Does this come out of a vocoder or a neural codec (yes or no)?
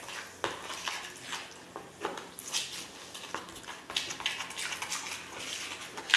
no